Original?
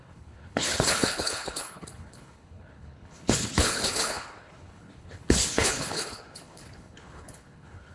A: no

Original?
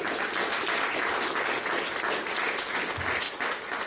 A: yes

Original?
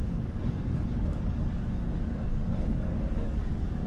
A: no